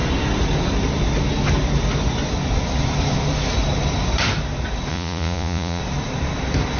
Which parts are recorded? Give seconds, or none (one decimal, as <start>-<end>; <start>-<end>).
0.0-4.9; 5.8-6.8